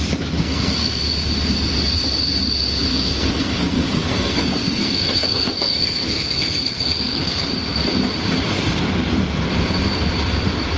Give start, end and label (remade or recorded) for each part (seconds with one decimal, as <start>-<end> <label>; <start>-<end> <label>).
0.0-0.4 recorded; 0.4-1.0 remade; 1.0-2.9 recorded; 2.9-7.5 remade; 7.5-10.8 recorded